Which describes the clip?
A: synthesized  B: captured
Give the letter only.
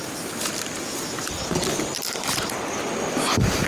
B